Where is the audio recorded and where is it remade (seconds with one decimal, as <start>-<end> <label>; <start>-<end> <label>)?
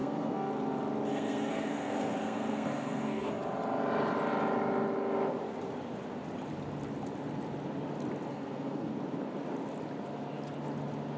0.0-0.5 remade; 0.5-1.1 recorded; 1.1-3.3 remade; 3.3-8.3 recorded; 8.3-8.9 remade; 8.9-11.2 recorded